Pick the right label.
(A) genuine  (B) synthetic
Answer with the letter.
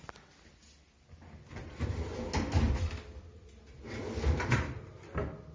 A